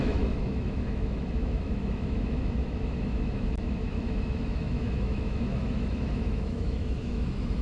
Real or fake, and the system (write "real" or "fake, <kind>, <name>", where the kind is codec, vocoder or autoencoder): fake, autoencoder, DAC-VAE